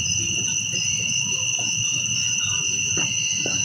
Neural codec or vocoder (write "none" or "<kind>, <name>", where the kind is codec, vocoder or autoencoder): none